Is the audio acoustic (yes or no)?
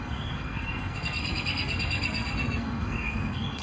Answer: no